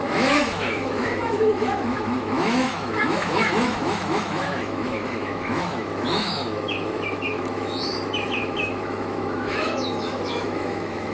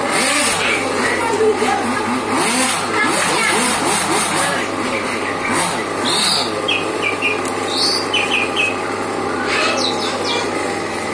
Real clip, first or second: second